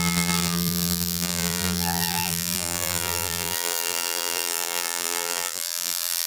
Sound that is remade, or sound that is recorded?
remade